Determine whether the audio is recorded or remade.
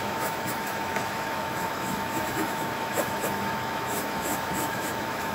remade